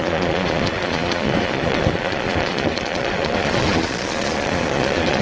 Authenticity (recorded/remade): remade